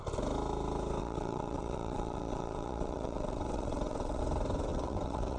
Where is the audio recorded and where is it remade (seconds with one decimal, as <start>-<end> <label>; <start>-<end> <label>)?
0.0-1.0 recorded; 1.0-4.2 remade; 4.2-4.7 recorded; 4.7-5.4 remade